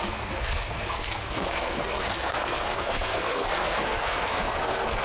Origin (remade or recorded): remade